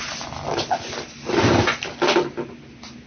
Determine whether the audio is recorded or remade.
recorded